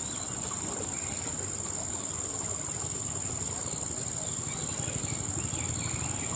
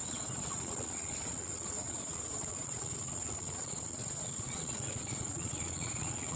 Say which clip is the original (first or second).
first